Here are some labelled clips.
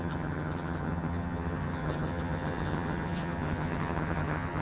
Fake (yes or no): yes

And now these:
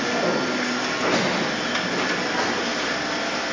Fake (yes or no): no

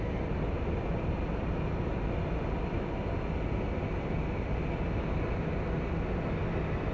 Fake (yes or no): no